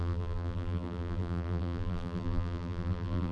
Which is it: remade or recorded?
remade